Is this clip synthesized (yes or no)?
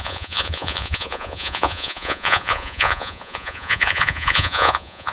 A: yes